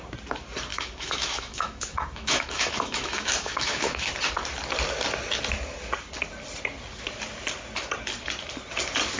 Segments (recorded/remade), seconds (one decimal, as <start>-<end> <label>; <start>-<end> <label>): 0.0-0.7 recorded; 0.7-4.1 remade; 4.1-9.2 recorded